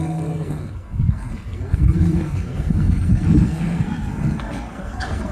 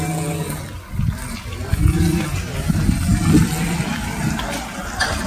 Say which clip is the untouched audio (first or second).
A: second